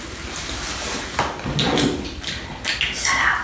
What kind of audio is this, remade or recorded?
recorded